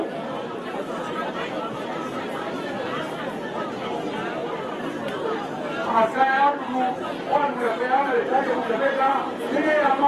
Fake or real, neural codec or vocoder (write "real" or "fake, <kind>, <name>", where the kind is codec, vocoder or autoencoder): real